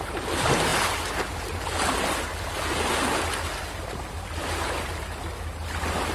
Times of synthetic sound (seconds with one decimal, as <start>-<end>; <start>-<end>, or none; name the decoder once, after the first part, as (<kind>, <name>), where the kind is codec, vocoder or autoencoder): none